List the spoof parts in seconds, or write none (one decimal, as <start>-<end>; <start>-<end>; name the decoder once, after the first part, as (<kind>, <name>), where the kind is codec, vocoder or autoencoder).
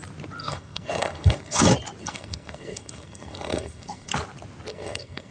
0.4-1.6 (codec, SNAC); 2.0-4.1; 4.7-5.3